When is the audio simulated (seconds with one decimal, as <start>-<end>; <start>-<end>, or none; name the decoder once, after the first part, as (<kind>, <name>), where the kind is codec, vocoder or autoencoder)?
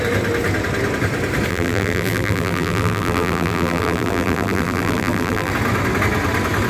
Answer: 1.5-5.5 (vocoder, BigVGAN v2)